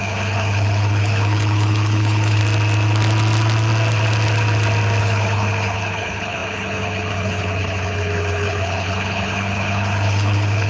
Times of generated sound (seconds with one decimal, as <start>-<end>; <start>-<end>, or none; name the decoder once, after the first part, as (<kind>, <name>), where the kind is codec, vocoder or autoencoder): 0.0-2.4 (codec, HILCodec); 5.0-10.7